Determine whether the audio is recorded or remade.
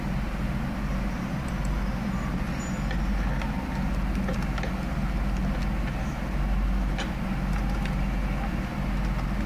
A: recorded